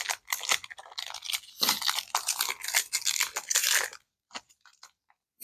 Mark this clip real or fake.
real